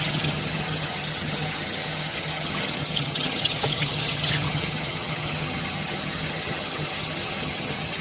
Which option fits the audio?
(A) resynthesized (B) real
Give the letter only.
A